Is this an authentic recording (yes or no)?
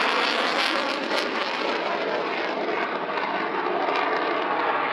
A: yes